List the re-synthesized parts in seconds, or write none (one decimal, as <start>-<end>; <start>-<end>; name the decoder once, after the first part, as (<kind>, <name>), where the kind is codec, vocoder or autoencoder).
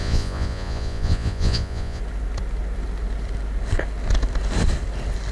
0.0-2.0 (vocoder, Vocos)